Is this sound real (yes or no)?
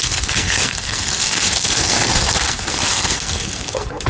no